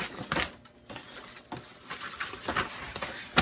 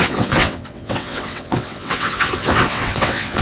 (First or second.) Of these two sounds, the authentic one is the first